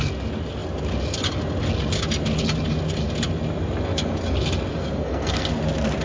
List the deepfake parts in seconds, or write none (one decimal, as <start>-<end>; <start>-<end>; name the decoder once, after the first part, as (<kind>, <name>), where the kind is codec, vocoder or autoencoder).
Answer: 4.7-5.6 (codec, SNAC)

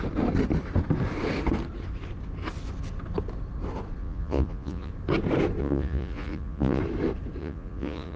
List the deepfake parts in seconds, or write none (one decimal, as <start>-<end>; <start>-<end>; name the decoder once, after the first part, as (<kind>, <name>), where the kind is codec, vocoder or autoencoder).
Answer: 4.0-4.9 (vocoder, Vocos); 5.6-6.8; 7.4-8.2

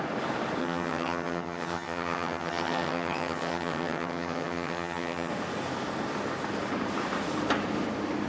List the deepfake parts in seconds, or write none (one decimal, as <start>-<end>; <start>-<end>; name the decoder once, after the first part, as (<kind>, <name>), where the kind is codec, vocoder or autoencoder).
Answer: 0.6-5.3 (vocoder, HiFi-GAN)

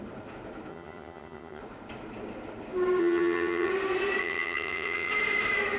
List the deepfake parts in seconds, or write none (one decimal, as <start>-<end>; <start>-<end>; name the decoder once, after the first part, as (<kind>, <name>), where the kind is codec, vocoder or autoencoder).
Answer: 0.7-1.6 (vocoder, HiFi-GAN); 3.0-3.7; 4.2-5.1

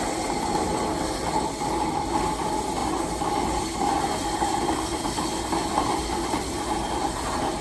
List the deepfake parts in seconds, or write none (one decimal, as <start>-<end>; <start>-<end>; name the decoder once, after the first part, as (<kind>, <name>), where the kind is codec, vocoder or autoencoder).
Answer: none

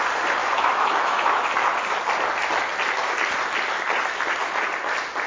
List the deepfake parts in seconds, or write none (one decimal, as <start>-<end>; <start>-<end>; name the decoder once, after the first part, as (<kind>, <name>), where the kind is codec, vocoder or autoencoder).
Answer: 0.4-1.5 (autoencoder, DAC-VAE)

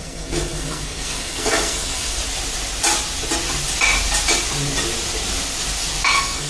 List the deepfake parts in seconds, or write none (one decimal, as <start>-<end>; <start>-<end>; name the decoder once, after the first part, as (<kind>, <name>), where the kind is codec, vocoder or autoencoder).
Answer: 0.0-2.2 (codec, SNAC); 6.1-6.5